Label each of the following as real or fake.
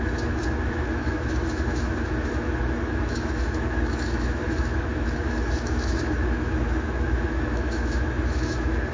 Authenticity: fake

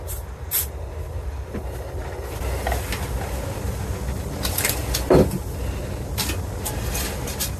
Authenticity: real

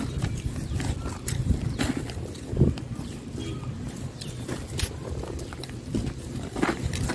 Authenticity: real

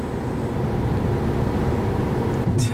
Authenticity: real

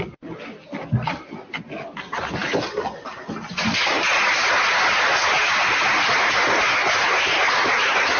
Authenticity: real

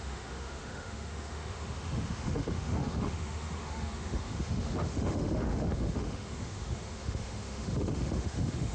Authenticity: fake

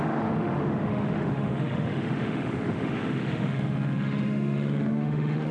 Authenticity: fake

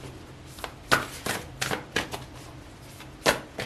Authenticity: real